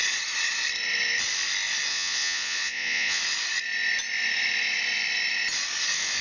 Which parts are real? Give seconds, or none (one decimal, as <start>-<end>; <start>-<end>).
0.0-1.9; 3.2-6.2